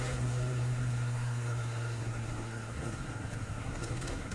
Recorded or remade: remade